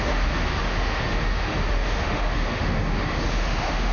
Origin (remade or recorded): remade